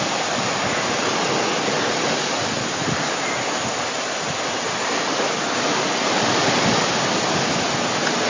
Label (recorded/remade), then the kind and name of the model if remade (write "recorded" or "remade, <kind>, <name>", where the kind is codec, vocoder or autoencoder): recorded